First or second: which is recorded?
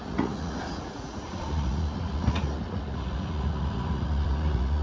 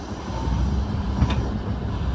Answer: second